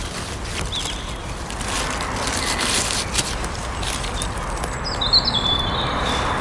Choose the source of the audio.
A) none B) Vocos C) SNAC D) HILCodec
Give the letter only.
A